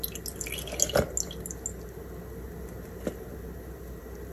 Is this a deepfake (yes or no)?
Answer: no